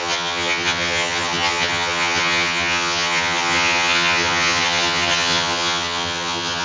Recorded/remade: remade